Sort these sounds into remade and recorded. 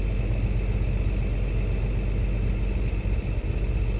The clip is recorded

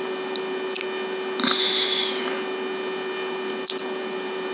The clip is recorded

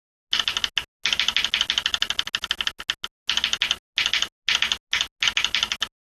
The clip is recorded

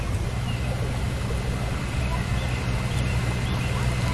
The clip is recorded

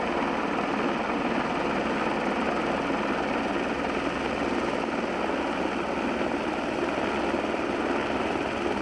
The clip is recorded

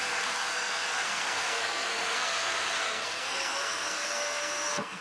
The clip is remade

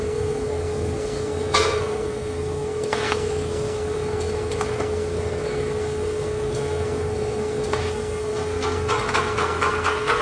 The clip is remade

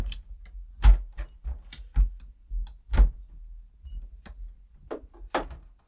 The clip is recorded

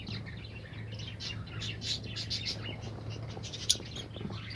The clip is recorded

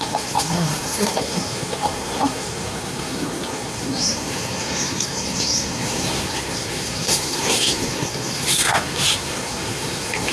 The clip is remade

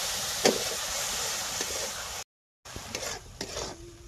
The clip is recorded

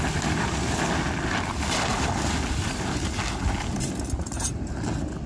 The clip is recorded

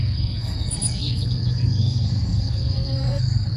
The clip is remade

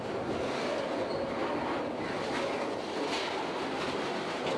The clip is recorded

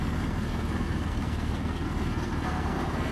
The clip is remade